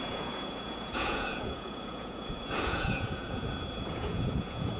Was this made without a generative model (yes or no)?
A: no